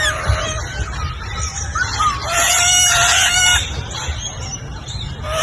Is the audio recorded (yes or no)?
yes